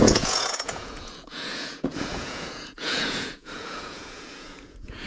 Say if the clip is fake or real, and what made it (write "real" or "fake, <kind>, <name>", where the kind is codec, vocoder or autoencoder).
fake, vocoder, Vocos